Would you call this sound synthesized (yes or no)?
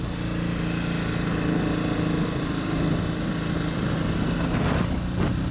no